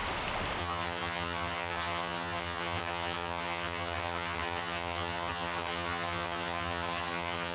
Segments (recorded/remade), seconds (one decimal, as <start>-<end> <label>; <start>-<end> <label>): 0.0-0.6 recorded; 0.6-7.5 remade